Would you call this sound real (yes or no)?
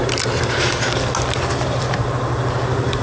yes